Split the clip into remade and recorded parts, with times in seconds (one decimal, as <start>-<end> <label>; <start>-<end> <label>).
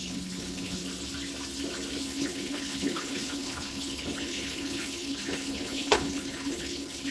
0.0-0.8 remade; 0.8-2.0 recorded; 2.0-7.1 remade